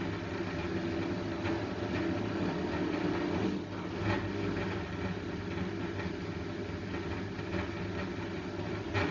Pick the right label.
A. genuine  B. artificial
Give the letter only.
A